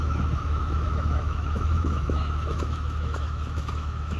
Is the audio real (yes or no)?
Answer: no